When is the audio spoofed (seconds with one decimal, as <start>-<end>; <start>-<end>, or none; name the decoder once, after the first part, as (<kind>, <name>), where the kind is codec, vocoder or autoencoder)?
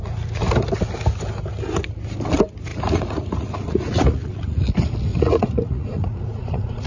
2.7-4.6 (vocoder, Vocos); 5.1-6.9